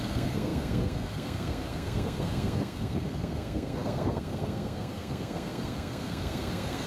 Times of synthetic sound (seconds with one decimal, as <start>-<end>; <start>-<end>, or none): 0.0-6.9